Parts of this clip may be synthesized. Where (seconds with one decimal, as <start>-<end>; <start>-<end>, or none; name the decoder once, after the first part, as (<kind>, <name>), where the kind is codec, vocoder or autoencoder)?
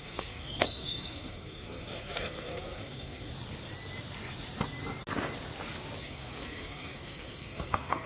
0.0-3.3 (codec, SNAC); 6.0-8.1